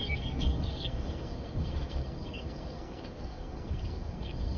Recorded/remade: remade